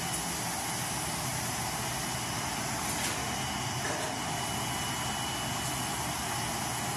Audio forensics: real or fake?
real